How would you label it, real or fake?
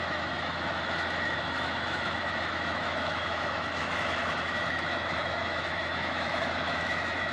fake